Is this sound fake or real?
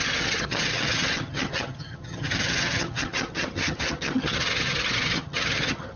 fake